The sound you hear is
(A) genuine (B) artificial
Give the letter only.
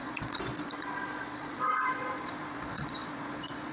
B